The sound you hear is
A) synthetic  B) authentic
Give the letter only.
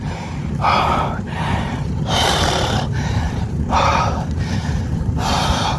A